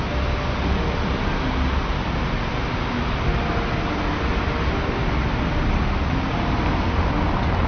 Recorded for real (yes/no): yes